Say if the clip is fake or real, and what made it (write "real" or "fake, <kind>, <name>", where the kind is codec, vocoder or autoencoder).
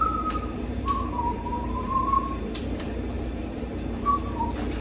fake, vocoder, BigVGAN v2